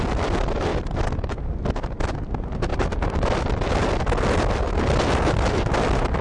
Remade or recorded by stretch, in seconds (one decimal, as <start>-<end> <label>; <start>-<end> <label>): 0.0-6.2 recorded